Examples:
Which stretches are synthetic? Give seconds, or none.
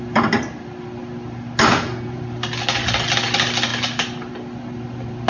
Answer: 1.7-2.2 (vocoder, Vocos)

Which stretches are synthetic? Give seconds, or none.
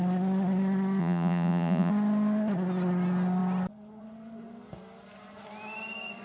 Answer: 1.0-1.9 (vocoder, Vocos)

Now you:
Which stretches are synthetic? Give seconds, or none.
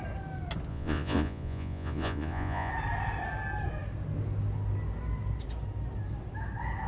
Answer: 0.7-2.7 (vocoder, Vocos)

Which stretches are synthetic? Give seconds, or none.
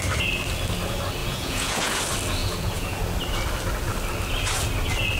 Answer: 1.2-2.0 (vocoder, Vocos); 2.4-3.0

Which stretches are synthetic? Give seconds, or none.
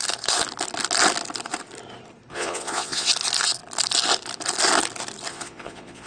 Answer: 2.3-3.1 (vocoder, Vocos); 5.3-6.1